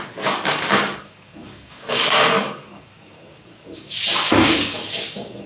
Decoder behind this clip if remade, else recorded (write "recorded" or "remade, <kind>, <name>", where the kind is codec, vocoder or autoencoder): remade, codec, DAC